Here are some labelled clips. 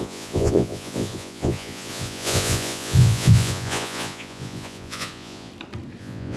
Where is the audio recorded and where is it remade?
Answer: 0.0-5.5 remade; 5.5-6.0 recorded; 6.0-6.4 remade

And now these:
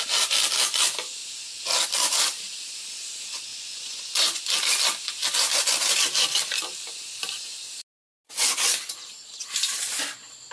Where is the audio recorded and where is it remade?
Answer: 0.0-3.5 recorded; 3.5-4.4 remade; 4.4-10.5 recorded